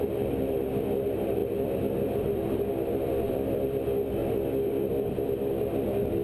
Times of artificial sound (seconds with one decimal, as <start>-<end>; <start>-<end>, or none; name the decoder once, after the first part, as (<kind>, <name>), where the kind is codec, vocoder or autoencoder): 0.0-6.2 (vocoder, BigVGAN v2)